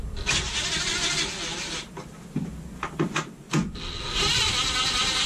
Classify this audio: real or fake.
real